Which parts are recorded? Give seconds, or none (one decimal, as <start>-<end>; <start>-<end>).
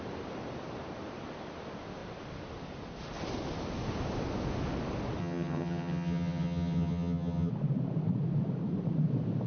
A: 0.0-5.2; 7.5-9.5